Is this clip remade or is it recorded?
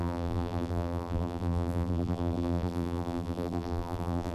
remade